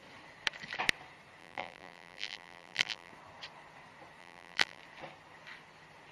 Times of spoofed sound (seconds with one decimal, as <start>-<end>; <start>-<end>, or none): 1.4-3.1; 4.2-4.8